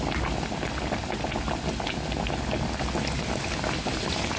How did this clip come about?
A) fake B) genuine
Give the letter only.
B